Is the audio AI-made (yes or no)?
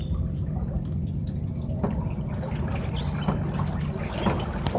no